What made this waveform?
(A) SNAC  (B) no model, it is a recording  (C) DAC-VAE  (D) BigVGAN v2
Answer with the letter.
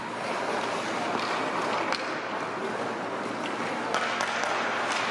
B